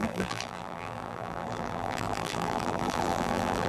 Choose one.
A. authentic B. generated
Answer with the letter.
B